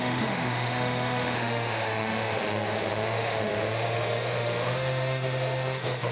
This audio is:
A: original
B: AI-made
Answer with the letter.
B